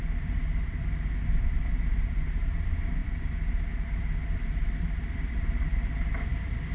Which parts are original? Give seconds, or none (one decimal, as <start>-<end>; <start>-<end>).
5.7-6.3